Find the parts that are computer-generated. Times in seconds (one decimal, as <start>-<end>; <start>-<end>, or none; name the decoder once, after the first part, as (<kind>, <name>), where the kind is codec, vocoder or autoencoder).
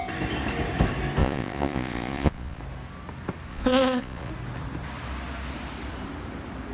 1.2-2.6 (vocoder, Vocos); 3.5-4.3